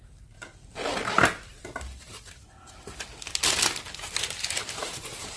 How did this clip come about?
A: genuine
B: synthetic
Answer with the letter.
A